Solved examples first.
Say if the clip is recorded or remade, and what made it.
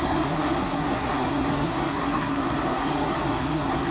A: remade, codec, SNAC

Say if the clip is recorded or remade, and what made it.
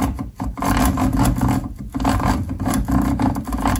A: recorded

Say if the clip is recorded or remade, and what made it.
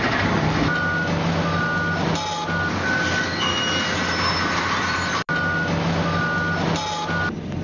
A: recorded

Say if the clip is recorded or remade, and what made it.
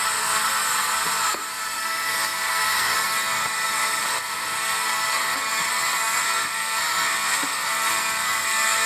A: remade, codec, SNAC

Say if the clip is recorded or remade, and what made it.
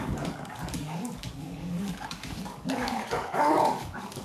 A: remade, codec, DAC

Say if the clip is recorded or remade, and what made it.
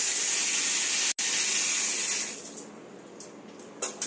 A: recorded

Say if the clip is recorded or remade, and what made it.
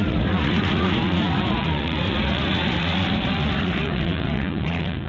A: remade, vocoder, Vocos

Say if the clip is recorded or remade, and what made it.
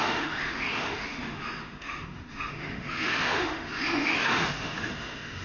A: remade, autoencoder, DAC-VAE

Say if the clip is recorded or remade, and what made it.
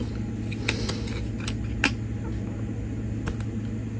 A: recorded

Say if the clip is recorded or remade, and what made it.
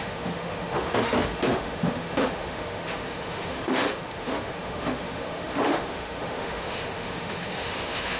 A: remade, autoencoder, DAC-VAE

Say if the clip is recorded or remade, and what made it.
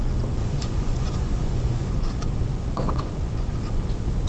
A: remade, vocoder, Vocos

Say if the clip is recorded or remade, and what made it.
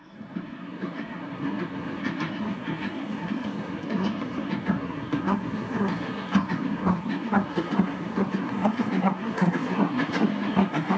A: remade, codec, SNAC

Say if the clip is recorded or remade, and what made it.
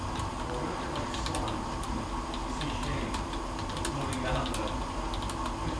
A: recorded